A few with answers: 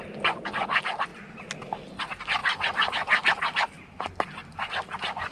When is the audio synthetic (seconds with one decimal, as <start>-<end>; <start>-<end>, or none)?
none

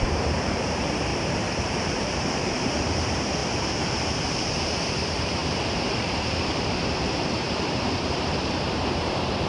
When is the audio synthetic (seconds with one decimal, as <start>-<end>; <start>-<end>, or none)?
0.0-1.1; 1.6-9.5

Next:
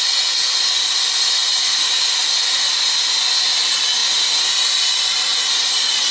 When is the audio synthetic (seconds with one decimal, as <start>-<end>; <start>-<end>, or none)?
none